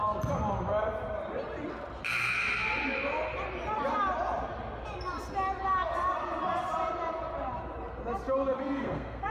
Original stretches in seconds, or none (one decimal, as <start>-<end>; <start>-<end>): 0.0-8.6